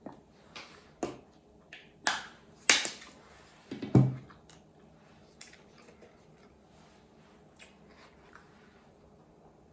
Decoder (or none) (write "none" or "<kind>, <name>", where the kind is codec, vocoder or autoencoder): none